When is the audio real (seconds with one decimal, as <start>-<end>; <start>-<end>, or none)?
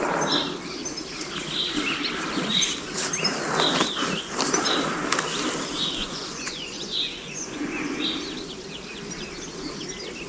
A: 0.0-6.0; 8.0-10.3